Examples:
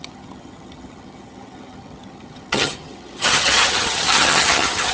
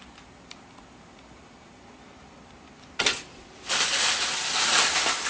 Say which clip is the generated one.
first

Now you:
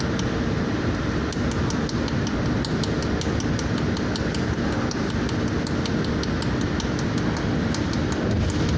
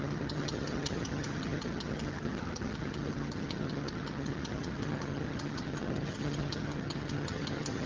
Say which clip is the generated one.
second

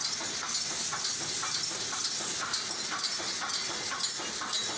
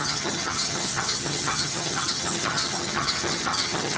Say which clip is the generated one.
second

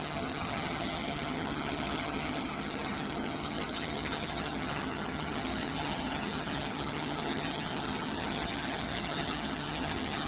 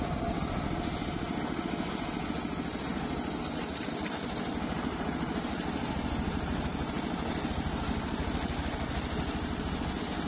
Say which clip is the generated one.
first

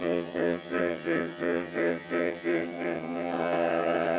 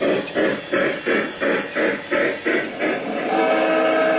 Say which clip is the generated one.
first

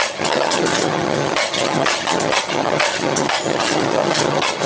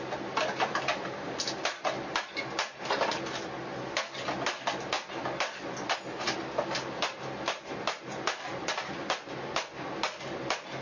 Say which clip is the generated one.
first